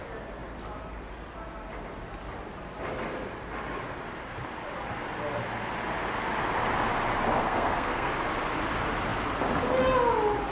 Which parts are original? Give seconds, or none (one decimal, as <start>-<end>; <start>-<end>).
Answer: 0.0-7.4; 8.1-10.5